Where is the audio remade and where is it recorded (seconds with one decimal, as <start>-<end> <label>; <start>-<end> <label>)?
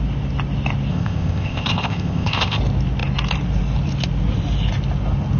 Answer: 0.0-0.9 recorded; 0.9-2.6 remade; 2.6-5.4 recorded